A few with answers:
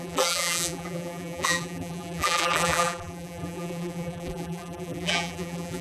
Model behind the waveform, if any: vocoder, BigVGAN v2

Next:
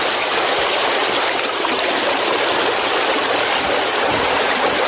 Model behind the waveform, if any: vocoder, BigVGAN v2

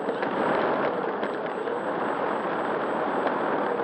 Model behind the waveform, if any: none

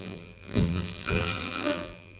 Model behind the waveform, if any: vocoder, BigVGAN v2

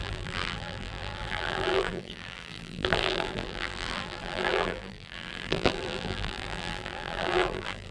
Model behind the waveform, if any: vocoder, BigVGAN v2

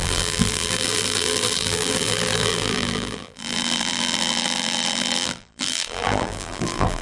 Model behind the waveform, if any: vocoder, BigVGAN v2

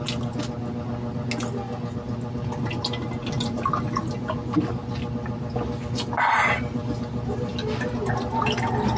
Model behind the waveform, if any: none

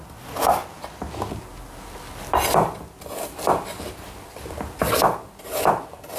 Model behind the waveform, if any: none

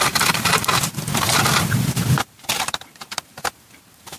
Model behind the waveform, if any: vocoder, BigVGAN v2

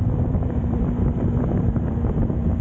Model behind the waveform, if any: vocoder, BigVGAN v2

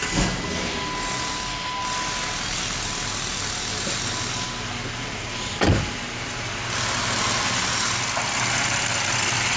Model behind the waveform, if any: none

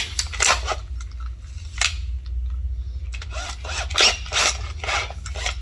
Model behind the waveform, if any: none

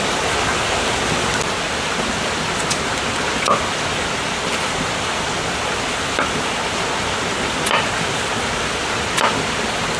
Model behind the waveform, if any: none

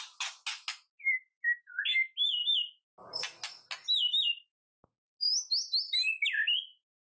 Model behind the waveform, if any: none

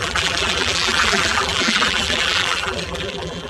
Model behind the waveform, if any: vocoder, BigVGAN v2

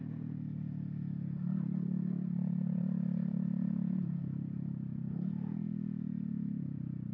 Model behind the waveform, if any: vocoder, BigVGAN v2